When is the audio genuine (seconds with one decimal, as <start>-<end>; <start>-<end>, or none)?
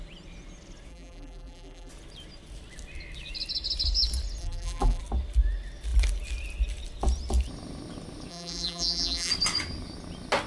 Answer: 0.0-0.9; 1.9-4.4; 5.0-8.3; 9.3-10.5